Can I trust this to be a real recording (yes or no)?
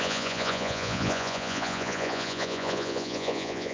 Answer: no